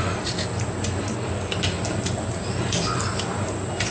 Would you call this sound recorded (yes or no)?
yes